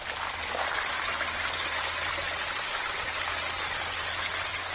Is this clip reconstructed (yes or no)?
no